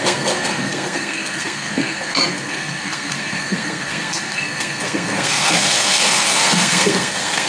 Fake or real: fake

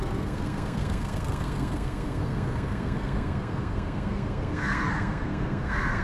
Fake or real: fake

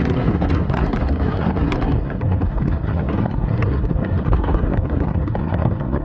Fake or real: fake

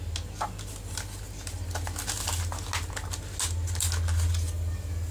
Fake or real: real